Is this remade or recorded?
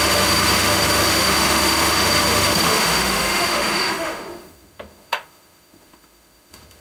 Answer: remade